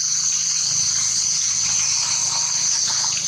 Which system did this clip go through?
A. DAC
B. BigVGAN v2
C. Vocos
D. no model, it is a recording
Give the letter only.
D